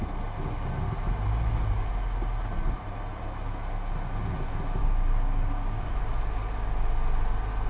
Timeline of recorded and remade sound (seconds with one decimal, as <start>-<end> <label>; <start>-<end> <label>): 0.0-4.8 recorded; 4.8-5.9 remade; 5.9-7.7 recorded